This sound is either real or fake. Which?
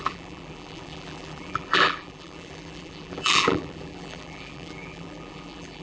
fake